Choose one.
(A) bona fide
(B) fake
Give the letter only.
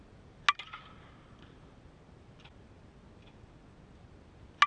A